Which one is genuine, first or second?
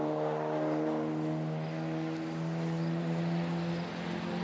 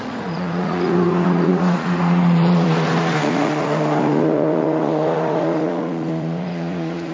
first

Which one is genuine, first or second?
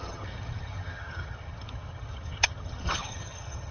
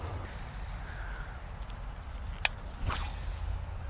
second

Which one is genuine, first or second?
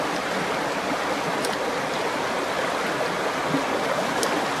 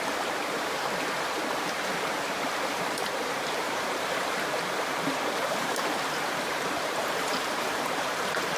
first